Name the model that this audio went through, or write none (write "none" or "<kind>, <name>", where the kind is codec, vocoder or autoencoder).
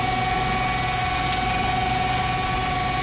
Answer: none